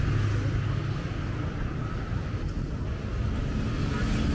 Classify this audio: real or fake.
real